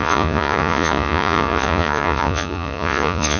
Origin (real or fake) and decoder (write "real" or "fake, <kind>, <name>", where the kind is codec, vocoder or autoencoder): fake, vocoder, Vocos